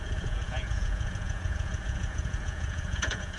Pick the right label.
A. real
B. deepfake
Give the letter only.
B